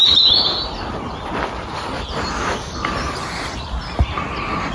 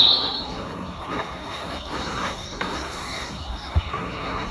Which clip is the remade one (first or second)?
second